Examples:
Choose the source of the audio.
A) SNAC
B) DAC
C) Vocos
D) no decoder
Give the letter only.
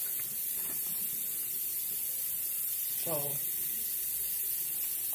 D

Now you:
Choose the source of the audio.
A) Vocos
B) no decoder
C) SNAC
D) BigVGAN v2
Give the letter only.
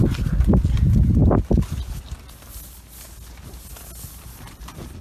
B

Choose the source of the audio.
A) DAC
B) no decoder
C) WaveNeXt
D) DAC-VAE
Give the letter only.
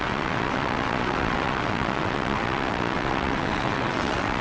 C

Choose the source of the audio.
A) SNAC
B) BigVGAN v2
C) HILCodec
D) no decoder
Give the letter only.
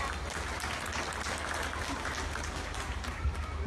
D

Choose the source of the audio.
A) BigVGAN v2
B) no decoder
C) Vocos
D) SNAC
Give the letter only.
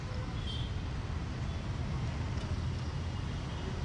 B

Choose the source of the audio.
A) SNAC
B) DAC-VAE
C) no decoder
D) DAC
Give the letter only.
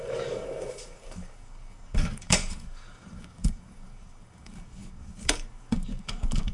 D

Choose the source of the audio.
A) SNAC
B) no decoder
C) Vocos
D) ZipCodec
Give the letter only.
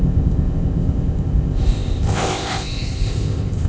D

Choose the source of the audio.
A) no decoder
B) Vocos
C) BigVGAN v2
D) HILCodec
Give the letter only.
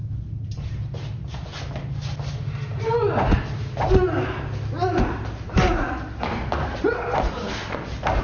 A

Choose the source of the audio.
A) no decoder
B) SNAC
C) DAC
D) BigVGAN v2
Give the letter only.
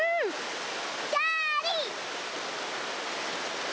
A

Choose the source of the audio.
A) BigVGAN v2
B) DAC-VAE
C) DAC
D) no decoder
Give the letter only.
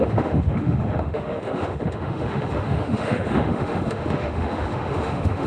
B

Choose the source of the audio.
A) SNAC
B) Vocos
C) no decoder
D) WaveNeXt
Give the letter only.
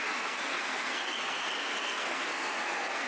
A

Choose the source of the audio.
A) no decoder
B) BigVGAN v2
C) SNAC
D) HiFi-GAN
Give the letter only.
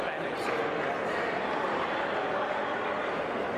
A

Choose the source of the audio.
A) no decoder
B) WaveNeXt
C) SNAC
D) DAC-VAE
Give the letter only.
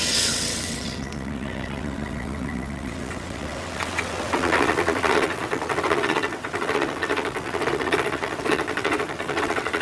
B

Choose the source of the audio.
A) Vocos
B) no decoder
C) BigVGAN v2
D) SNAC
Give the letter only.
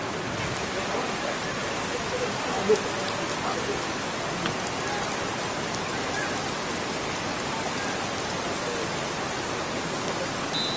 B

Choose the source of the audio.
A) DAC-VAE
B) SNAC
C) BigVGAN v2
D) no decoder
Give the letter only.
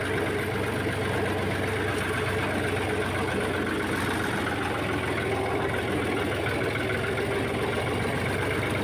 D